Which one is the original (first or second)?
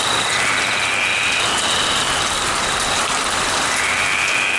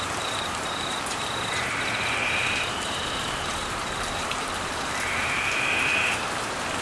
first